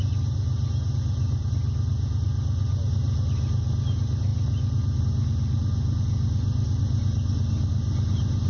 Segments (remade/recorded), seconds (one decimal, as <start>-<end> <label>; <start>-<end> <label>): 0.0-8.5 recorded